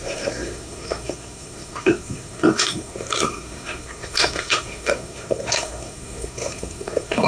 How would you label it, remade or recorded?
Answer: remade